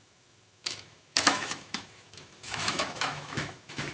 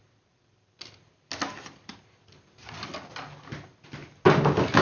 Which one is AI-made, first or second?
first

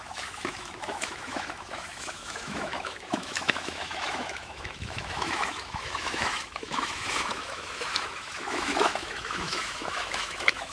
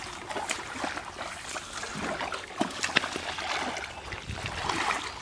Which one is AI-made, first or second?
first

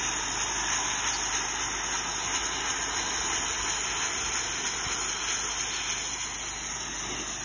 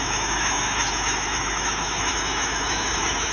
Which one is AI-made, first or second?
second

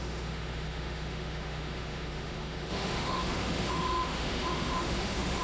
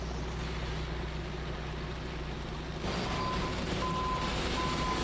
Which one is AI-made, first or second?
first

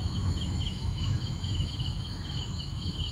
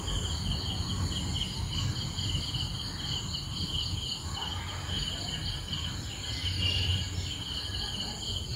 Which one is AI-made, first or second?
first